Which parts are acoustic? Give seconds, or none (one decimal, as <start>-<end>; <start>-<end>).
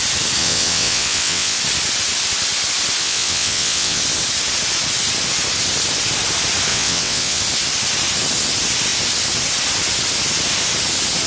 0.0-0.4; 1.6-3.0; 4.0-6.7; 7.4-11.3